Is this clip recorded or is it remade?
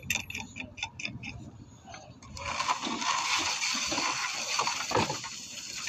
recorded